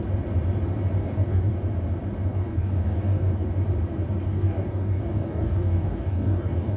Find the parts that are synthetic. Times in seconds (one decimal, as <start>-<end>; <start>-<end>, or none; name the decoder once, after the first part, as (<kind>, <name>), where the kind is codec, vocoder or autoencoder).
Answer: 1.0-1.5 (codec, DAC); 2.3-3.5; 4.2-6.8